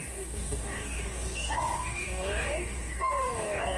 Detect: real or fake fake